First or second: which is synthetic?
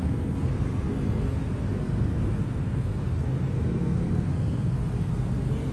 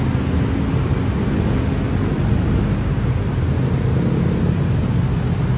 first